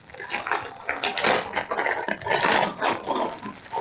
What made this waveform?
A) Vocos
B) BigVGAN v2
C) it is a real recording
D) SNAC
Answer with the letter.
C